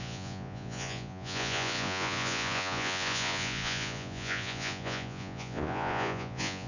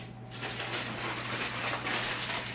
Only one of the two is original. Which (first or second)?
second